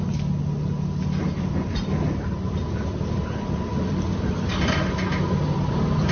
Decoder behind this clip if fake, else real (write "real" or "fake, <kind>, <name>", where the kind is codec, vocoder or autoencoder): real